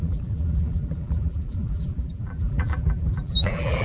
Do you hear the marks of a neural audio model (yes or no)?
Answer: yes